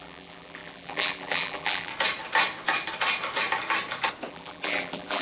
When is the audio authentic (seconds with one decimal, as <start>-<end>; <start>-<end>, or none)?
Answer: 1.9-4.3